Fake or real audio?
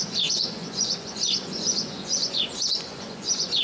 fake